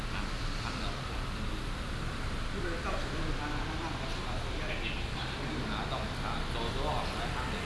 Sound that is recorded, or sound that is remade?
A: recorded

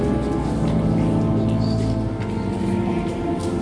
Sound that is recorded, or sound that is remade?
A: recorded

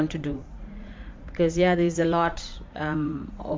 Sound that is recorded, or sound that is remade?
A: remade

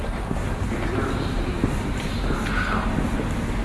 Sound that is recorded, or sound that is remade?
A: recorded